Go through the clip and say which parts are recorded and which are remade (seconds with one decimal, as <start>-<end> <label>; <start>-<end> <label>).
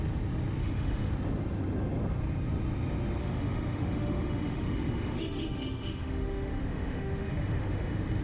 0.0-0.6 recorded; 0.6-1.1 remade; 1.1-3.2 recorded; 3.2-8.2 remade